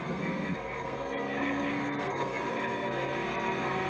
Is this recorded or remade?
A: remade